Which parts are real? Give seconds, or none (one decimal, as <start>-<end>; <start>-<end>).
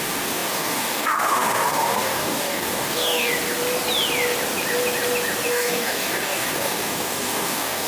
3.3-5.5